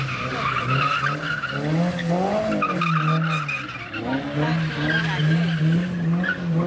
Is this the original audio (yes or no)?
yes